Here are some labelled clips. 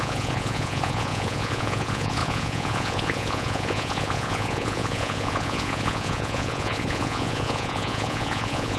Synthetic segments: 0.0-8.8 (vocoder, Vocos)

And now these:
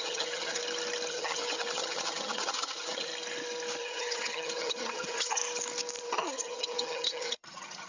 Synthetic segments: 0.0-0.6 (vocoder, HiFi-GAN); 1.1-3.1; 3.8-5.4; 6.0-7.9

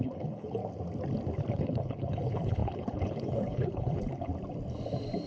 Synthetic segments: 0.0-0.6 (codec, HILCodec); 1.5-4.3

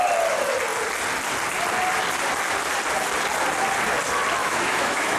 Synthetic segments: 4.4-5.2 (autoencoder, DAC-VAE)